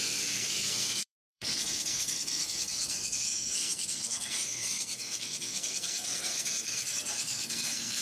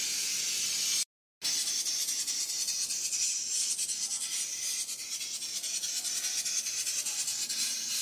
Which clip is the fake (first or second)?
first